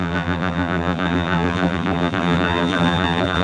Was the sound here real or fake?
fake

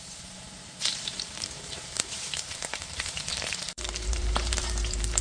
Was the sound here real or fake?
fake